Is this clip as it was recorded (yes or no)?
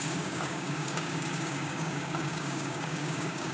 no